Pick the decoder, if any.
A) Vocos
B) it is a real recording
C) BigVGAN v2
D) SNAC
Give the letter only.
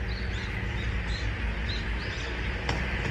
B